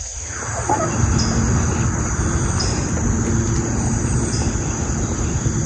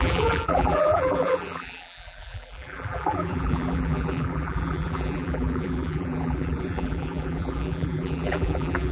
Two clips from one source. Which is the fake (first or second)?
second